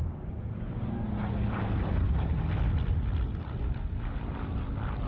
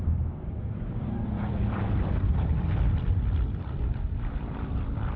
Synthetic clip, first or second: second